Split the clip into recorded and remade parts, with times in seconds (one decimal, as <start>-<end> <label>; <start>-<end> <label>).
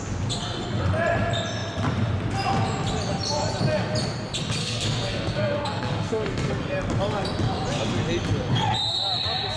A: 0.0-4.6 recorded; 4.6-6.5 remade; 6.5-9.6 recorded